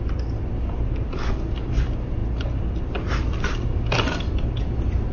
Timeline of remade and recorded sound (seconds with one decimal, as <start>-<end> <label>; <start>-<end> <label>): 0.0-5.1 recorded